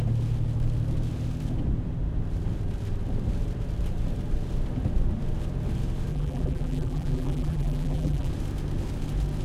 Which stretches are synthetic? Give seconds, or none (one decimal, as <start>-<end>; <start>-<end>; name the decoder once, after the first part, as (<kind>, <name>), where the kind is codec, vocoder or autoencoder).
6.1-8.3 (vocoder, BigVGAN v2)